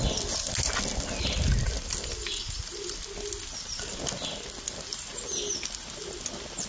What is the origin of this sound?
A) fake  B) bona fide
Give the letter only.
B